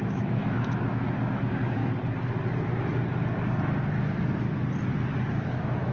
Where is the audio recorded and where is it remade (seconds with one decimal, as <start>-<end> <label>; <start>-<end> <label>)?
0.0-1.8 remade; 1.8-5.3 recorded; 5.3-5.9 remade